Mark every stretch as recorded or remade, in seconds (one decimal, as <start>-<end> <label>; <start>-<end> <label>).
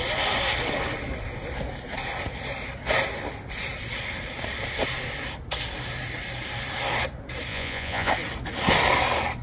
0.0-7.5 recorded; 7.5-8.1 remade; 8.1-9.4 recorded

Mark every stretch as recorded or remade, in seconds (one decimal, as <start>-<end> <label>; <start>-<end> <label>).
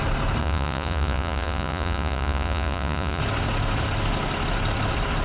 0.0-0.4 recorded; 0.4-3.2 remade; 3.2-5.2 recorded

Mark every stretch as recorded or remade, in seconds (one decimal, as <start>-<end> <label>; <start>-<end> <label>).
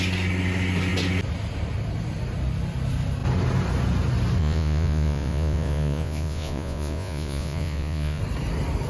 0.0-4.4 recorded; 4.4-8.2 remade; 8.2-8.9 recorded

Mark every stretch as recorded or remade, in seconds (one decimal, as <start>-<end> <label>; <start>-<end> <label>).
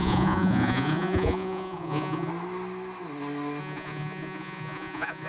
0.0-2.3 remade; 2.3-3.6 recorded; 3.6-5.3 remade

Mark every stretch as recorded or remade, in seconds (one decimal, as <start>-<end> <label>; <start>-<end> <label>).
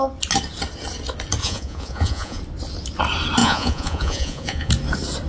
0.0-1.4 recorded; 1.4-2.4 remade; 2.4-3.4 recorded; 3.4-4.7 remade; 4.7-5.3 recorded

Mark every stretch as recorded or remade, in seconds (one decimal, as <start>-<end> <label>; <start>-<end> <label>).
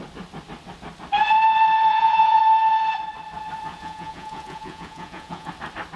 0.0-1.9 recorded; 1.9-2.4 remade; 2.4-3.7 recorded; 3.7-5.5 remade; 5.5-6.0 recorded